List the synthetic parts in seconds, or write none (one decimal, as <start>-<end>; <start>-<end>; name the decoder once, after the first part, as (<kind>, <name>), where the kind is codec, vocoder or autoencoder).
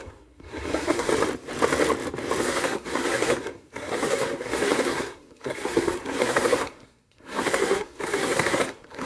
0.0-1.1 (codec, SNAC); 2.4-9.1